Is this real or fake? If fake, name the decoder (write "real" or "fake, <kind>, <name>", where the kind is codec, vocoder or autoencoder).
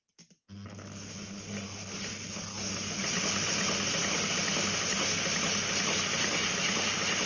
real